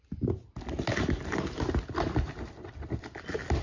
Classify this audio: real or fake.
real